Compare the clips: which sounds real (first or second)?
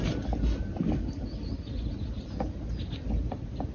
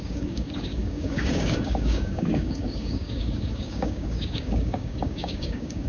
first